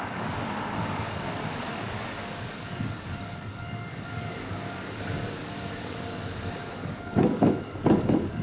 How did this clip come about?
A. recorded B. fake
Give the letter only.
B